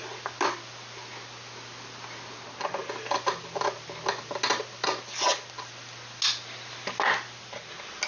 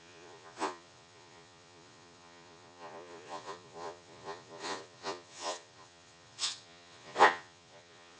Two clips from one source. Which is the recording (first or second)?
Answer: first